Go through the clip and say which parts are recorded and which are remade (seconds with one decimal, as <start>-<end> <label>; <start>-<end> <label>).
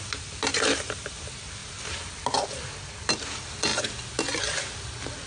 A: 0.0-5.3 recorded